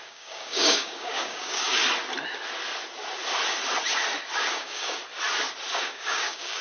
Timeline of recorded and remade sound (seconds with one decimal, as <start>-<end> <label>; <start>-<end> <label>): 0.0-1.8 remade; 1.8-4.5 recorded; 4.5-5.0 remade; 5.0-5.7 recorded; 5.7-6.6 remade